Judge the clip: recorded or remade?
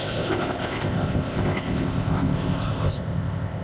remade